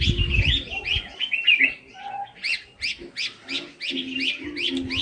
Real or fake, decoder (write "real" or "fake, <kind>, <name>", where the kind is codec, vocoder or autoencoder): real